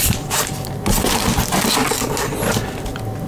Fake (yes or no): no